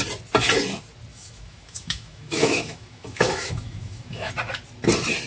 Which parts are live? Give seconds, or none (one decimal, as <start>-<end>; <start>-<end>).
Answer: 0.0-1.1; 4.3-5.3